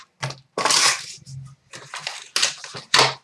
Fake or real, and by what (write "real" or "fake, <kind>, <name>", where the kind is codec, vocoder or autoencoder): real